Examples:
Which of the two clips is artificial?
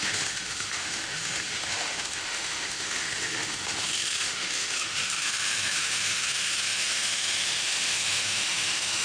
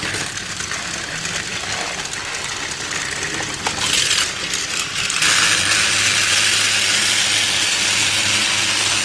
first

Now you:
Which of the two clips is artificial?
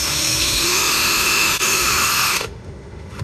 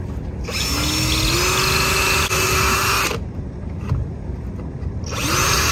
first